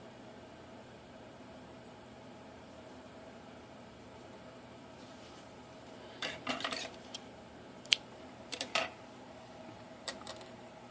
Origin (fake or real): fake